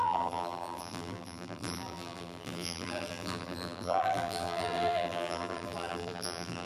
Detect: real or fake fake